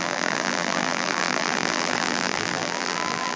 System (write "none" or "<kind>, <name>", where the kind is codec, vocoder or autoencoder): vocoder, BigVGAN v2